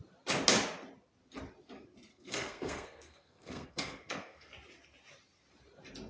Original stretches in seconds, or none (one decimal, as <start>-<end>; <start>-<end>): 0.0-2.1; 4.5-6.1